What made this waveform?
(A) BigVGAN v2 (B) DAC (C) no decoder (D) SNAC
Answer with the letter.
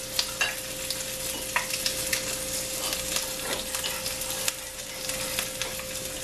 C